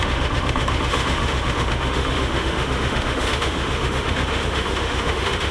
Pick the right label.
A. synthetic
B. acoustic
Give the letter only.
A